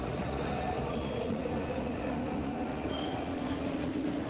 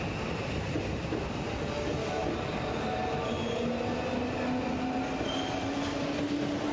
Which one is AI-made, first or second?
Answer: first